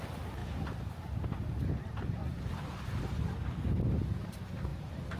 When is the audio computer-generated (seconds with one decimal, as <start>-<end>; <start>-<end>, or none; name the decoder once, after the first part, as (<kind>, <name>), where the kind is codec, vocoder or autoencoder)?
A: none